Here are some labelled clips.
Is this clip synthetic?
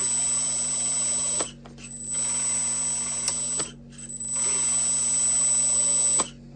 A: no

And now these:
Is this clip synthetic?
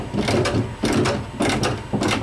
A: no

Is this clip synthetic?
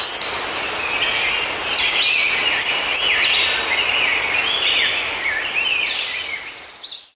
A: no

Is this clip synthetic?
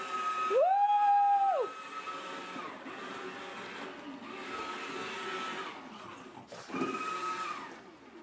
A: no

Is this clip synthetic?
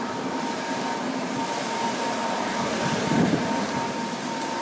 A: yes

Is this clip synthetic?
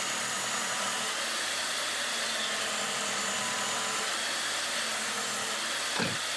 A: no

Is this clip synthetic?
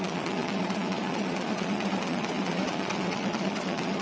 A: yes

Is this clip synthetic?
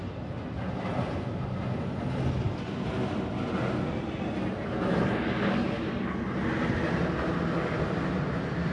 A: no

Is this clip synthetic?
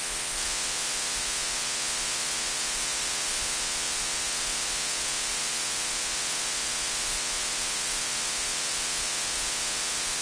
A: yes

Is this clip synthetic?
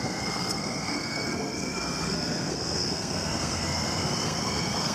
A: yes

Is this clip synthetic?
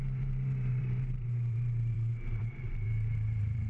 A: yes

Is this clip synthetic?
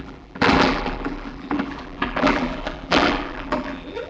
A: yes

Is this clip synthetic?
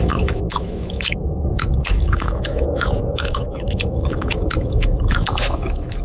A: yes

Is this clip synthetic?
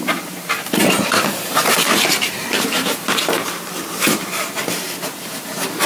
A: yes